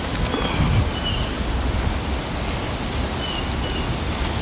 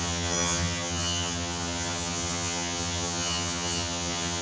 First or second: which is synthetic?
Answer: second